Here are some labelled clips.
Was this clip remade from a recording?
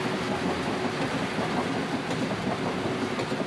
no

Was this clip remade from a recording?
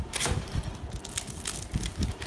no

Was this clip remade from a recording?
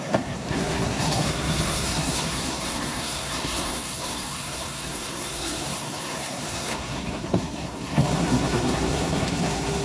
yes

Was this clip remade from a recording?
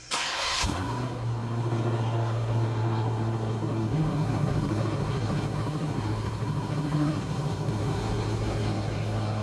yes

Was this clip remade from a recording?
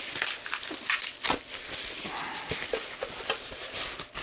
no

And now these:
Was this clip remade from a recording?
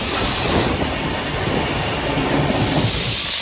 no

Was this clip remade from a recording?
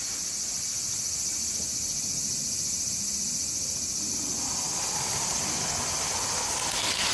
no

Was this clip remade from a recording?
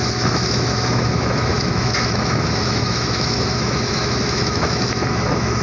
yes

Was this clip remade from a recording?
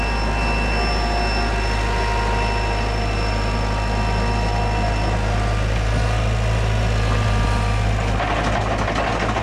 no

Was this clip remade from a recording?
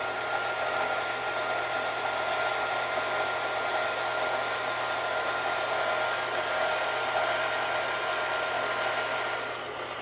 no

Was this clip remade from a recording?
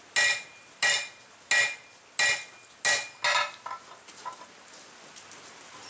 no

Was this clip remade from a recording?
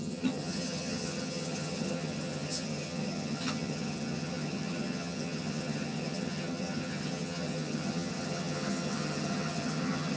yes